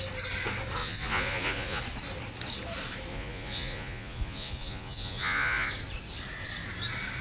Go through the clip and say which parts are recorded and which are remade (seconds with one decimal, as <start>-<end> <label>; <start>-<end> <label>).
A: 0.0-0.8 recorded; 0.8-1.8 remade; 1.8-3.1 recorded; 3.1-5.7 remade; 5.7-7.2 recorded